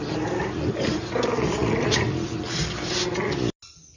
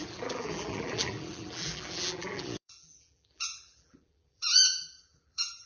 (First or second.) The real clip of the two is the first